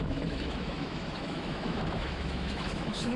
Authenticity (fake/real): fake